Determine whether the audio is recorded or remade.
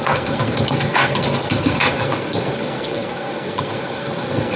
remade